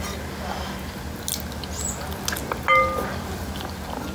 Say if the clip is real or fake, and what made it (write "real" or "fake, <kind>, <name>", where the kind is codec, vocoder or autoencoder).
real